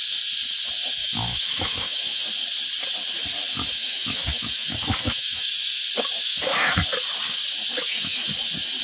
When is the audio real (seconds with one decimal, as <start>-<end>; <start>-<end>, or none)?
0.0-1.0; 2.2-3.8; 5.5-6.2; 6.8-7.8; 8.3-8.8